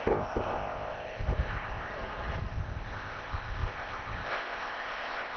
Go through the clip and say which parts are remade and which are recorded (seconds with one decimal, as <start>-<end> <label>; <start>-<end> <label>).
0.0-1.9 remade; 1.9-2.5 recorded; 2.5-5.4 remade